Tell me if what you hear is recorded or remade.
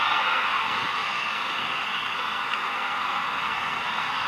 remade